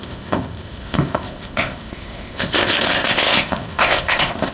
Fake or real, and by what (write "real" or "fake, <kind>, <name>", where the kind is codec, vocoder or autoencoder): fake, codec, ZipCodec